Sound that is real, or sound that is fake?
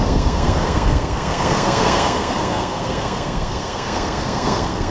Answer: fake